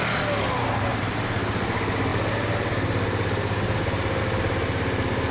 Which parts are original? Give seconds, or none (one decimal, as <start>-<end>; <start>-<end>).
0.0-5.3